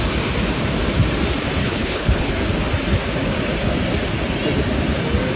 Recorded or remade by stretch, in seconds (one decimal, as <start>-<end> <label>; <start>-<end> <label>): 0.0-1.6 recorded; 1.6-2.3 remade; 2.3-5.4 recorded